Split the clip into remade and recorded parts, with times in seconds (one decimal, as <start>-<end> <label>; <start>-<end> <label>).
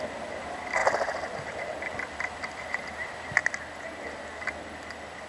0.0-0.8 remade; 0.8-1.9 recorded; 1.9-3.4 remade; 3.4-5.3 recorded